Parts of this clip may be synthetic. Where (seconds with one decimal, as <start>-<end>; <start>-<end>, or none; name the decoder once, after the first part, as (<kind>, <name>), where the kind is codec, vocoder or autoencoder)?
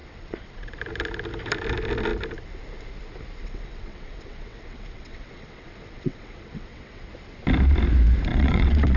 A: 0.0-0.8 (vocoder, WaveNeXt); 3.4-7.1; 8.3-9.0